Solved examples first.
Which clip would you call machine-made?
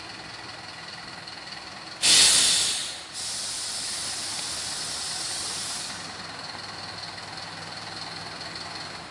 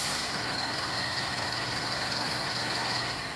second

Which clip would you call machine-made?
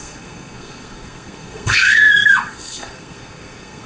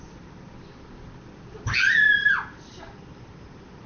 first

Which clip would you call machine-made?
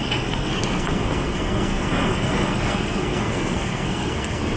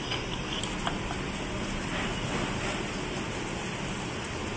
first